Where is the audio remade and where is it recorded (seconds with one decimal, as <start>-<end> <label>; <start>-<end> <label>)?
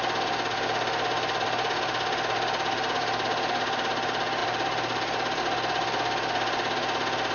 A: 0.0-7.3 recorded